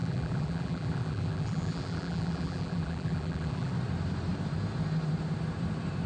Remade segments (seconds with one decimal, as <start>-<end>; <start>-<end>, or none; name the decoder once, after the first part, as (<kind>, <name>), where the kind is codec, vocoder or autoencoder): 0.0-3.7 (vocoder, BigVGAN v2)